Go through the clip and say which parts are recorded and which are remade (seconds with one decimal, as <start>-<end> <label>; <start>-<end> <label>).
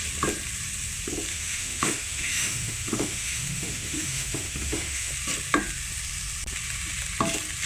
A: 0.0-1.3 recorded; 1.3-5.1 remade; 5.1-7.7 recorded